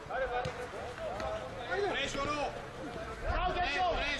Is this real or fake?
real